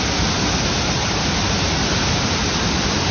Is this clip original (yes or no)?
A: yes